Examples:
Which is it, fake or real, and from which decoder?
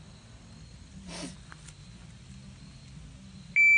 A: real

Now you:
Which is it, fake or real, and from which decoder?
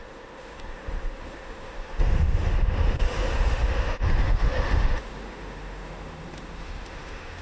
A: fake, autoencoder, DAC-VAE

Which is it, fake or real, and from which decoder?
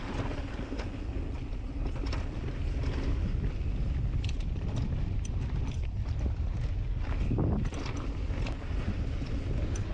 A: real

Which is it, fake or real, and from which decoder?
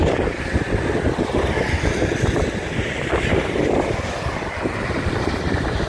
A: real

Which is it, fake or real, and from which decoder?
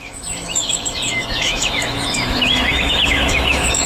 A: fake, autoencoder, DAC-VAE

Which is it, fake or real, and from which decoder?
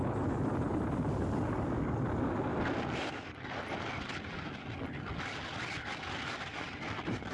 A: real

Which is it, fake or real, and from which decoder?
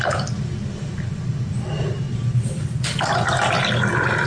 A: real